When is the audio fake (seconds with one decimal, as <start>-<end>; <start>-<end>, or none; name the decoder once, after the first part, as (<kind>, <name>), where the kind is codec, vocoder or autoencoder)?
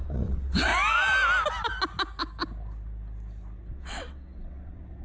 0.0-0.7 (vocoder, WaveNeXt); 3.7-5.0